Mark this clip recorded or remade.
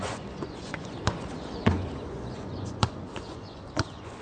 remade